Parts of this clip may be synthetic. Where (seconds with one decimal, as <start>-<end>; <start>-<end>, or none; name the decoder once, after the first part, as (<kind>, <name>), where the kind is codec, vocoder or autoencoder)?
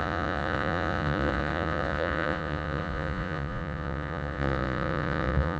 0.0-5.6 (vocoder, Vocos)